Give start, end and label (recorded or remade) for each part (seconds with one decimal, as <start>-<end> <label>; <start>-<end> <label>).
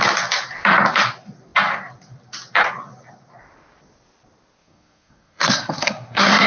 0.0-4.6 recorded; 4.6-6.5 remade